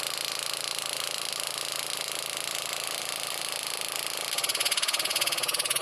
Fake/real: real